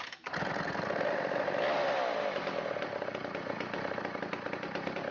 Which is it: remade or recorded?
remade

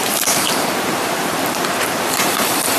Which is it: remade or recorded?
remade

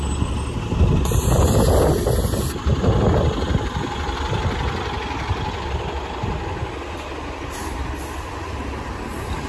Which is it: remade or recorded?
recorded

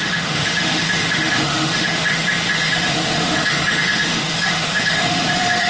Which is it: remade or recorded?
remade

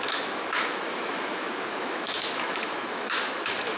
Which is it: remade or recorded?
remade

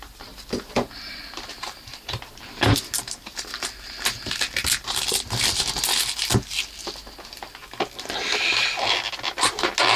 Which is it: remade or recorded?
recorded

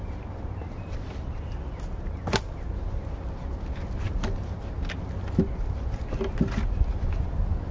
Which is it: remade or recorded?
recorded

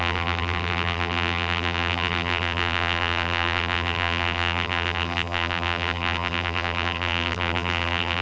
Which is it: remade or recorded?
remade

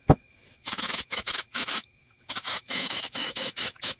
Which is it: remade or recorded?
remade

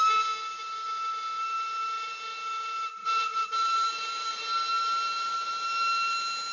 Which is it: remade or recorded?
recorded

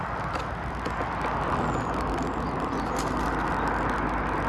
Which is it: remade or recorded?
recorded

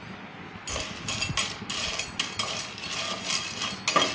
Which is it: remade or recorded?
recorded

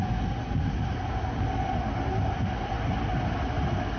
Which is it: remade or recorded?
recorded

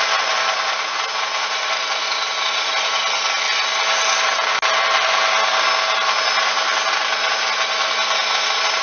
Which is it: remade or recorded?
recorded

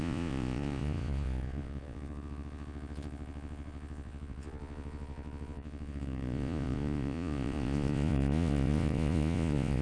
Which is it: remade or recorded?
remade